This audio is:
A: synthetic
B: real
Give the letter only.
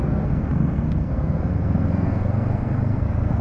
A